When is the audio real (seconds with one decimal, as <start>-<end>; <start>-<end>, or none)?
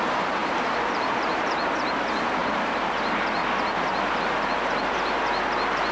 0.0-0.4; 1.9-2.4; 2.9-3.4; 4.2-5.9